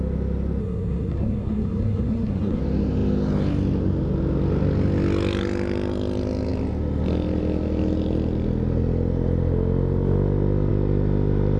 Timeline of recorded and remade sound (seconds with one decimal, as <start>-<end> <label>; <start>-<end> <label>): 0.0-0.6 recorded; 0.6-2.6 remade; 2.6-11.6 recorded

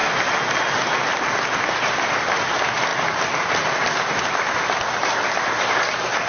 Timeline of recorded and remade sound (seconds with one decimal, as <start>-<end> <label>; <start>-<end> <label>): 0.0-6.3 recorded